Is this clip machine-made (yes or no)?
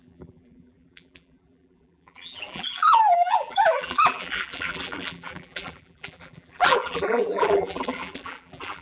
yes